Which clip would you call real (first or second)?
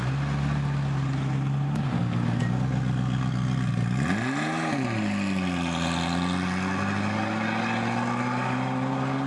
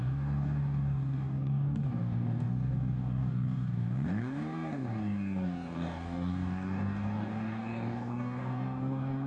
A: first